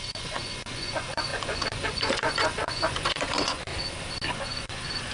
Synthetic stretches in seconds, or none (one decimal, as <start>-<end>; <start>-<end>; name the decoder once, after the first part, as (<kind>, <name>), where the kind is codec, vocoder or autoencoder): 0.0-3.7 (vocoder, Vocos); 4.3-5.1